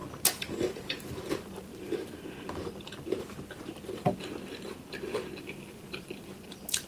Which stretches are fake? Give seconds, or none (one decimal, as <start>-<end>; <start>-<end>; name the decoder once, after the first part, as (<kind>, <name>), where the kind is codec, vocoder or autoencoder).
0.5-1.7 (vocoder, BigVGAN v2); 5.4-6.9